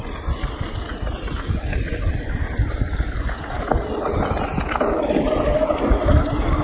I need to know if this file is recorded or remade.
recorded